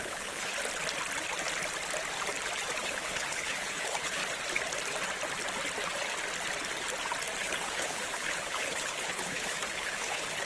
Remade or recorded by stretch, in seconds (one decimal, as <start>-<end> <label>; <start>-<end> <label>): 0.0-0.5 remade; 0.5-2.8 recorded; 2.8-4.2 remade; 4.2-7.4 recorded; 7.4-10.5 remade